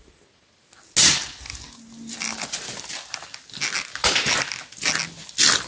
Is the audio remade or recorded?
recorded